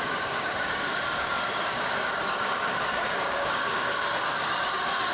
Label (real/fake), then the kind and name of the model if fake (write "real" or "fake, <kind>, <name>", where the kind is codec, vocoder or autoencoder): fake, codec, DAC